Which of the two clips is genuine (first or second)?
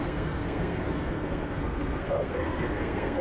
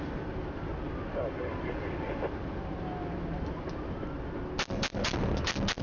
second